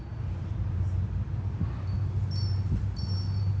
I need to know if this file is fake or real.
real